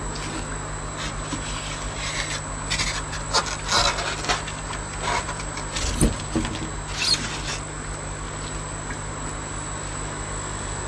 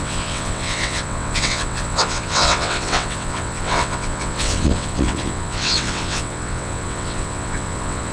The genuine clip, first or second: first